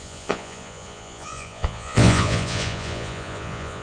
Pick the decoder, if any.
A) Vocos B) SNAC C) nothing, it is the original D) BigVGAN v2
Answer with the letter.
A